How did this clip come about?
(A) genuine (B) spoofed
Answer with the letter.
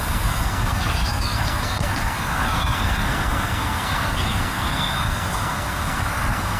B